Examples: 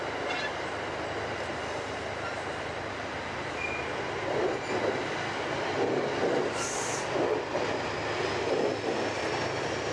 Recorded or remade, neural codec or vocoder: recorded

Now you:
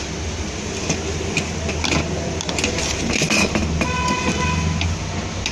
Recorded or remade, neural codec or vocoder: recorded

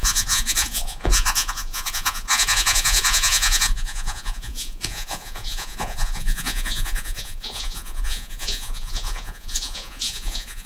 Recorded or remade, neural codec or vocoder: remade, vocoder, Vocos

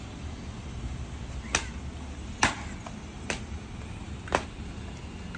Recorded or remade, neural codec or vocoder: recorded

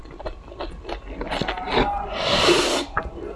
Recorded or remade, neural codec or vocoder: recorded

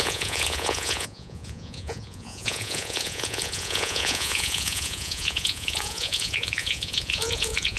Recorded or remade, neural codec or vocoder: remade, vocoder, Vocos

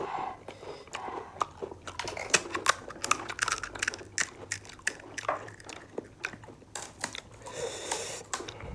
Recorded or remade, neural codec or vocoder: recorded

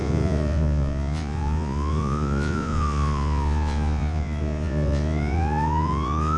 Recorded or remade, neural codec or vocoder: remade, vocoder, Vocos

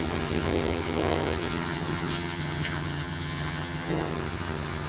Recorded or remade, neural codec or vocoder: remade, vocoder, HiFi-GAN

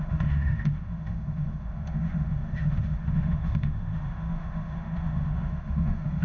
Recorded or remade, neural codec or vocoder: remade, autoencoder, DAC-VAE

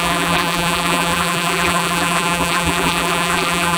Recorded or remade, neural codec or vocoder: remade, vocoder, BigVGAN v2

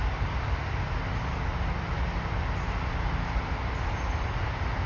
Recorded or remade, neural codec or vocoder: recorded